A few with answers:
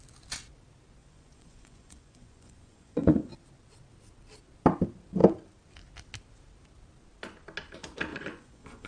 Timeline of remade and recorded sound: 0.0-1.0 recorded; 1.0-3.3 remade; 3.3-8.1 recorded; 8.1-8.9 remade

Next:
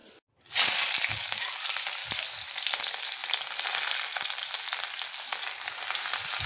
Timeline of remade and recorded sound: 0.0-1.1 recorded; 1.1-2.0 remade; 2.0-2.8 recorded; 2.8-3.2 remade; 3.2-5.1 recorded; 5.1-6.5 remade

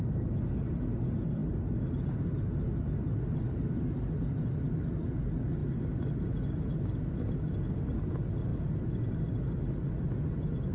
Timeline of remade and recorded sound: 0.0-10.7 recorded